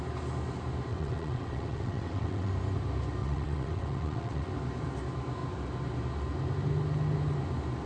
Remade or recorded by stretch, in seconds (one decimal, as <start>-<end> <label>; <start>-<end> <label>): 0.0-0.9 recorded; 0.9-2.5 remade; 2.5-3.2 recorded; 3.2-4.5 remade; 4.5-7.9 recorded